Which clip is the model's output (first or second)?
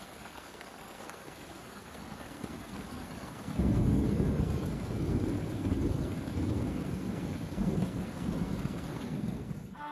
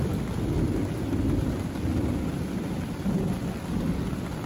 first